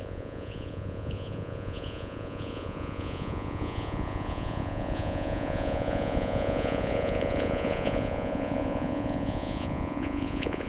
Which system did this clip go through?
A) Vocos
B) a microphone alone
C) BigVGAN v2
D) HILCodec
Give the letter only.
A